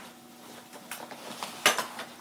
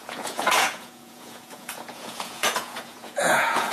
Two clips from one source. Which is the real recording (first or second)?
first